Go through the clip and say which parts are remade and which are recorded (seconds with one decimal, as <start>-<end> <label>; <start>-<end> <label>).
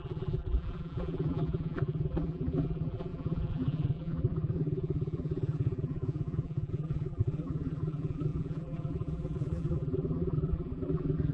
0.0-11.3 remade